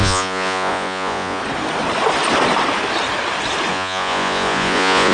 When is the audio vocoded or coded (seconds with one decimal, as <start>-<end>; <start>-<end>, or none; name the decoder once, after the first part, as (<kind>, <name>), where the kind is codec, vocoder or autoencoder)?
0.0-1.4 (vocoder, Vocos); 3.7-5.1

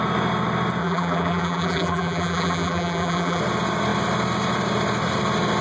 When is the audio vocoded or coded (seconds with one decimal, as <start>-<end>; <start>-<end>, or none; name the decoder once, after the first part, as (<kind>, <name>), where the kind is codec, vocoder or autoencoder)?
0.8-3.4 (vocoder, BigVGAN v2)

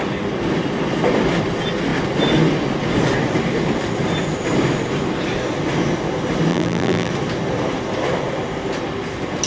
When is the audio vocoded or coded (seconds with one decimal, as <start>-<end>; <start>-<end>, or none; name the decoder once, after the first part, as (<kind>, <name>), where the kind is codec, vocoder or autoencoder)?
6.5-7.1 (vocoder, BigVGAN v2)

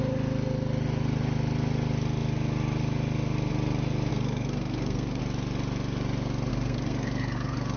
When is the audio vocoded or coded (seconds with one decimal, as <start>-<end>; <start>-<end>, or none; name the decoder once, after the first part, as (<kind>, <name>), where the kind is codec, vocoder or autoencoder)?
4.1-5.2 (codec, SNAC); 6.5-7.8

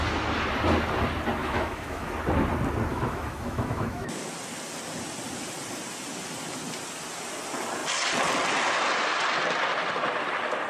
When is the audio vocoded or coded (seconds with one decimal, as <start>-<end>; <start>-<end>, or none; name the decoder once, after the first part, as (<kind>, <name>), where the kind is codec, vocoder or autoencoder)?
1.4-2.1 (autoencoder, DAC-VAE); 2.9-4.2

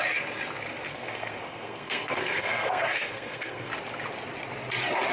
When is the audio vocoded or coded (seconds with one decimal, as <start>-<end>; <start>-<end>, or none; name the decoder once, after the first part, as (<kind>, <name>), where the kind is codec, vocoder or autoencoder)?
0.9-3.7 (codec, SNAC)